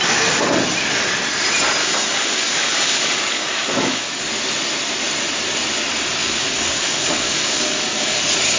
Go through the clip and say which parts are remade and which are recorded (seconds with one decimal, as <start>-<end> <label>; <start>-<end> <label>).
0.0-1.8 recorded; 1.8-4.2 remade; 4.2-6.2 recorded; 6.2-8.2 remade; 8.2-8.6 recorded